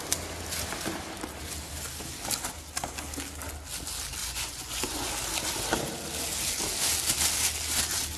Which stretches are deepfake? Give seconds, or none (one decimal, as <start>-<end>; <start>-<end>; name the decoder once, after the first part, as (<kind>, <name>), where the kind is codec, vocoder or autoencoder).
4.2-5.1 (vocoder, Vocos)